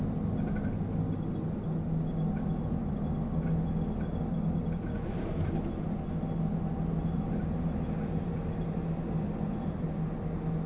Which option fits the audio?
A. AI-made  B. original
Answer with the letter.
B